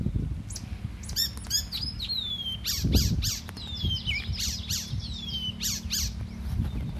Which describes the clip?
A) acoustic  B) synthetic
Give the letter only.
A